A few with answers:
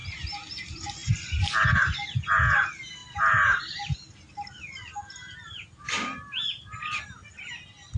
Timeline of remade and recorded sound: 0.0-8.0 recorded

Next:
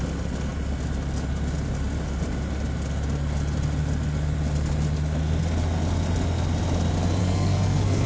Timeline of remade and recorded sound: 0.0-7.2 recorded; 7.2-8.1 remade

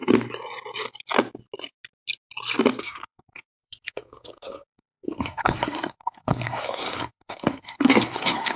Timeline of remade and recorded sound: 0.0-2.8 recorded; 2.8-8.6 remade

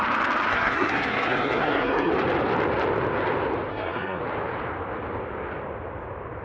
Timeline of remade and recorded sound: 0.0-0.5 recorded; 0.5-2.1 remade; 2.1-3.7 recorded; 3.7-4.2 remade; 4.2-6.4 recorded

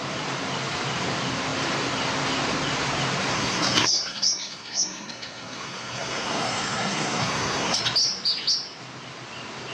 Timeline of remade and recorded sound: 0.0-3.3 recorded; 3.3-7.8 remade; 7.8-9.7 recorded